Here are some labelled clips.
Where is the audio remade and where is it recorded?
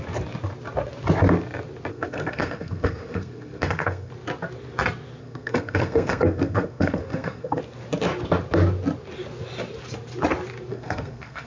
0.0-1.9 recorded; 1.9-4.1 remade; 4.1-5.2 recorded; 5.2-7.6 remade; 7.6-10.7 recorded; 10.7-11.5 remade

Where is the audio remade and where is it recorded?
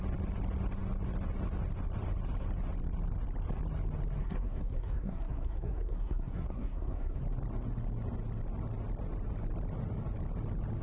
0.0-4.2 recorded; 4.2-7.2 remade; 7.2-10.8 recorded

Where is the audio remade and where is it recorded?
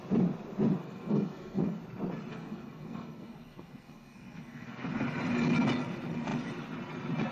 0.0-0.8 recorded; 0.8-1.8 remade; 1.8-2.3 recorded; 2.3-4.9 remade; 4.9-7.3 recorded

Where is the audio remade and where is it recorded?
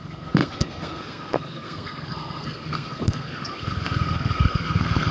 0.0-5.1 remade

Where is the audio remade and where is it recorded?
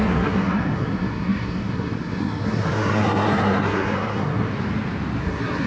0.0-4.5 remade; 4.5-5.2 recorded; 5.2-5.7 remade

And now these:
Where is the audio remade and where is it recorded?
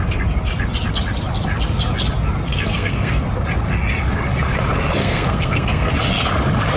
0.0-2.5 recorded; 2.5-3.2 remade; 3.2-5.0 recorded; 5.0-5.9 remade; 5.9-6.8 recorded